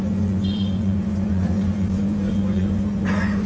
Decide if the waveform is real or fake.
fake